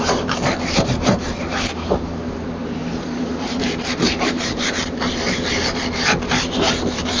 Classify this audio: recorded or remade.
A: remade